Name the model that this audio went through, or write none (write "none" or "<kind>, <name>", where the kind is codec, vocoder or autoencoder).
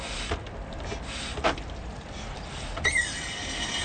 none